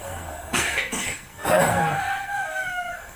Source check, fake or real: fake